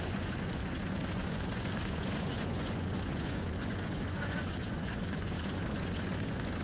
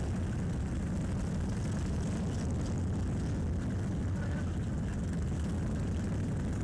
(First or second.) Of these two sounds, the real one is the second